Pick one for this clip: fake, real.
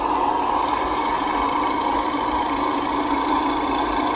real